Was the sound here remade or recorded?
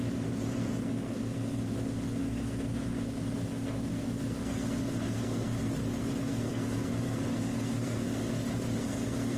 remade